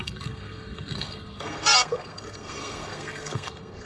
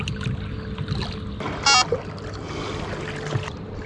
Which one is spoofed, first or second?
first